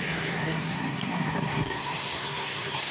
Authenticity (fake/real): fake